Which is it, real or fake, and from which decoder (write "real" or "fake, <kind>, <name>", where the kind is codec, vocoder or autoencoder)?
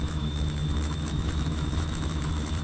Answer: fake, autoencoder, DAC-VAE